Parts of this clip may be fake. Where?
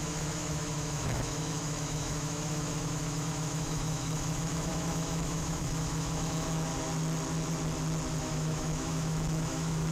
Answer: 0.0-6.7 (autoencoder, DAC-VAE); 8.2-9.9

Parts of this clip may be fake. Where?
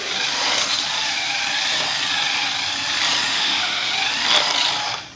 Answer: 3.3-3.9 (autoencoder, DAC-VAE)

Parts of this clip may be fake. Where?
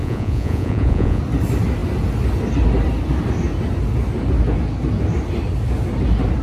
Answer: 0.0-1.2 (vocoder, Vocos)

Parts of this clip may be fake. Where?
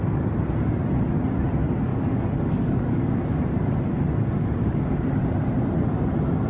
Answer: 1.9-3.3 (codec, DAC)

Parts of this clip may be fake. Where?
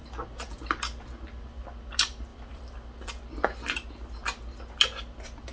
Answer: 2.3-3.2 (vocoder, BigVGAN v2)